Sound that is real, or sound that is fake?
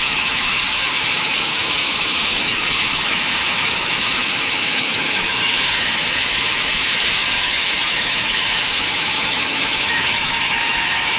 fake